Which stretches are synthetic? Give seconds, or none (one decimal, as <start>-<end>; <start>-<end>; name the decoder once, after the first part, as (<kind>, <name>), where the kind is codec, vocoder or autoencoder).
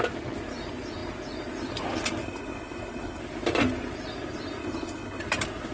2.2-3.2 (codec, HILCodec); 4.6-5.2